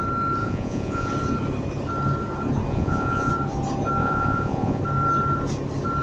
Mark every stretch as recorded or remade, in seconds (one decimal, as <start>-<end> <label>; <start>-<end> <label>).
0.0-0.4 recorded; 0.4-1.1 remade; 1.1-2.7 recorded; 2.7-3.3 remade; 3.3-4.0 recorded; 4.0-4.8 remade; 4.8-6.0 recorded